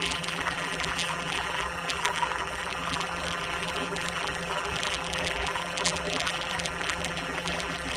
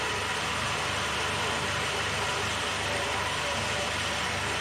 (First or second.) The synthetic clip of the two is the first